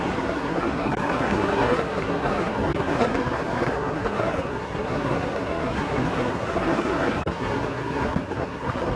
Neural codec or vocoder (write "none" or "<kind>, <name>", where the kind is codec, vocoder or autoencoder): codec, SNAC